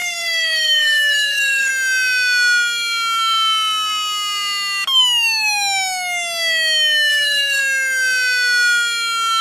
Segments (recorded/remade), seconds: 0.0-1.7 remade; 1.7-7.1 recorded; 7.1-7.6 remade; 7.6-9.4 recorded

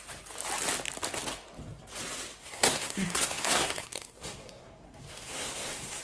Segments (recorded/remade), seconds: 0.0-2.4 recorded; 2.4-6.0 remade

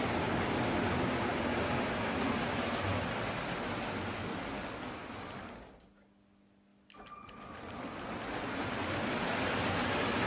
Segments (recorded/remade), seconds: 0.0-10.3 recorded